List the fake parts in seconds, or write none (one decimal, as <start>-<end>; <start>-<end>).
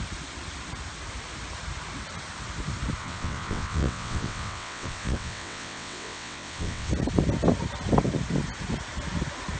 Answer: 3.0-6.9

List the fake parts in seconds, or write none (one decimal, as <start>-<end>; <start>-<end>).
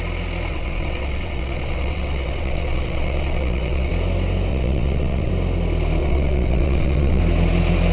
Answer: 0.5-3.9; 4.5-5.3; 6.0-7.2